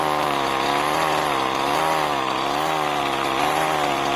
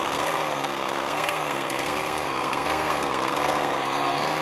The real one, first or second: first